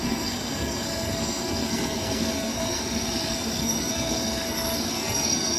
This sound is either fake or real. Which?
fake